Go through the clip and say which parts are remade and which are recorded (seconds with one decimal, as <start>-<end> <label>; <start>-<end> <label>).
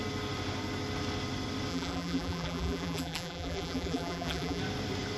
0.0-1.7 recorded; 1.7-4.6 remade; 4.6-5.2 recorded